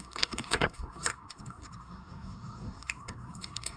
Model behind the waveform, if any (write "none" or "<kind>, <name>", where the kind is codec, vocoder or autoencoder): codec, SNAC